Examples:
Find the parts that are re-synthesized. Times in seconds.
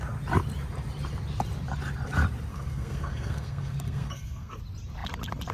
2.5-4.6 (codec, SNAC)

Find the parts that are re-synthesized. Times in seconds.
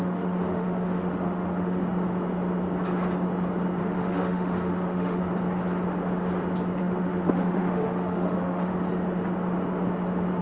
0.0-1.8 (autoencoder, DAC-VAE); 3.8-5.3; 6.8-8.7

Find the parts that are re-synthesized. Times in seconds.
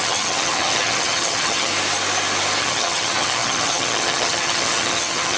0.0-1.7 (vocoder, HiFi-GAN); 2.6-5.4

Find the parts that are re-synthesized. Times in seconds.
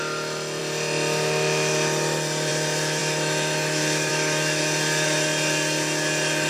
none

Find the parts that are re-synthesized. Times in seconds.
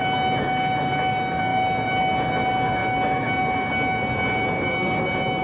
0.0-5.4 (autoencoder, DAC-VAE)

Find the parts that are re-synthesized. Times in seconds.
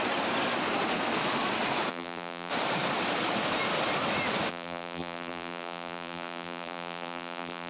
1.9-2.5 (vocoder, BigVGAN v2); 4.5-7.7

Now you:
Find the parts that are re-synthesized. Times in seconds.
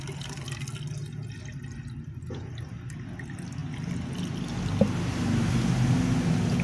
none